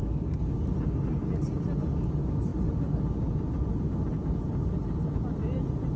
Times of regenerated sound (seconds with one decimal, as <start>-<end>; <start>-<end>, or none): none